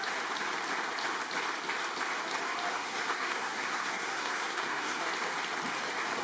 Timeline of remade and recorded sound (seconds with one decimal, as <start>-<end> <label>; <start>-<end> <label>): 0.0-2.7 recorded; 2.7-5.1 remade; 5.1-6.2 recorded